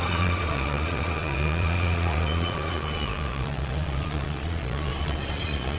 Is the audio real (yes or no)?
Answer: no